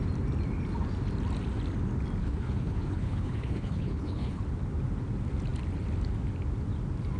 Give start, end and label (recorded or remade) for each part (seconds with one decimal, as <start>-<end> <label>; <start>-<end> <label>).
0.0-2.2 recorded; 2.2-4.4 remade; 4.4-7.2 recorded